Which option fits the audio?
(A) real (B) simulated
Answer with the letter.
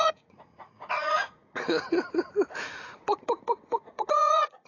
B